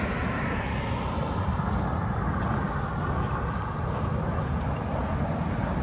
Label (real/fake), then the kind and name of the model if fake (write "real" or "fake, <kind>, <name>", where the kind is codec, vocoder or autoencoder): real